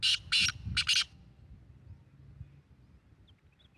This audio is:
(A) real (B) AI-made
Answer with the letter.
A